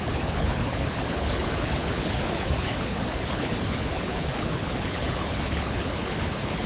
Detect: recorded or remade remade